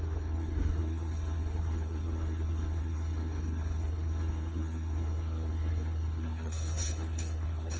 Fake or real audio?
fake